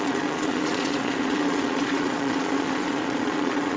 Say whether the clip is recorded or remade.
remade